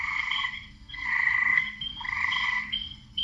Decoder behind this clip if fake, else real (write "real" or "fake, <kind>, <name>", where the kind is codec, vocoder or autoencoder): fake, codec, SNAC